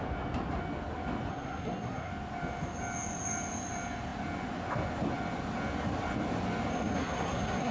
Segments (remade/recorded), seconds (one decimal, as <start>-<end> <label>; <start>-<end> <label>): 0.0-1.3 recorded; 1.3-2.1 remade; 2.1-6.7 recorded; 6.7-7.7 remade